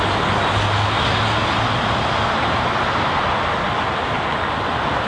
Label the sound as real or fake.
real